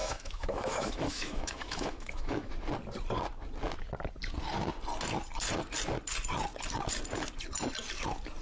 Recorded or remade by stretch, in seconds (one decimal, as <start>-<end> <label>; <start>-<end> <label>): 0.0-2.5 remade; 2.5-8.4 recorded

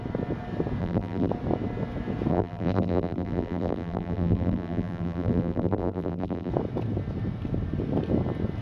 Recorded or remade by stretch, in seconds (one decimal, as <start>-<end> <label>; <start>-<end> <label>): 0.0-0.8 recorded; 0.8-1.3 remade; 1.3-2.3 recorded; 2.3-6.5 remade; 6.5-8.6 recorded

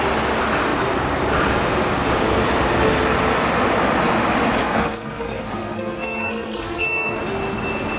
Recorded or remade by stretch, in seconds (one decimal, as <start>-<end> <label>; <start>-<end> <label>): 0.0-4.6 recorded; 4.6-7.2 remade; 7.2-8.0 recorded

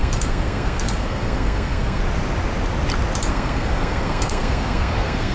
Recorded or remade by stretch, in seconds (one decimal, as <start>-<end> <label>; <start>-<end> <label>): 0.0-2.0 remade; 2.0-3.3 recorded; 3.3-5.3 remade